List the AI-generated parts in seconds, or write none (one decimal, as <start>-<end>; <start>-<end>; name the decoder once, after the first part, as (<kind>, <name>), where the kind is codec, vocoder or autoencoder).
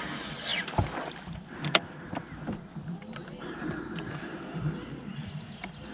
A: none